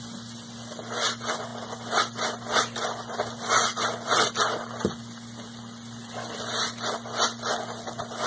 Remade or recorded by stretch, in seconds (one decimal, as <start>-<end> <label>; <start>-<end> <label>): 0.0-8.3 recorded